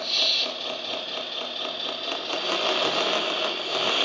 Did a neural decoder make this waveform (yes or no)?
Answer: no